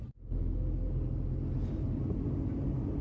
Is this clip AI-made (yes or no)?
no